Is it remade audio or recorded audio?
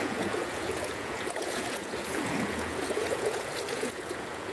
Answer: remade